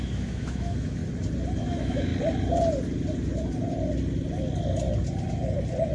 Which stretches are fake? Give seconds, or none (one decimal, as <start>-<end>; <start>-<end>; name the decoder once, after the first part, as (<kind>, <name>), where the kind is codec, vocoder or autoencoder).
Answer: 0.0-1.0 (autoencoder, DAC-VAE); 1.6-2.1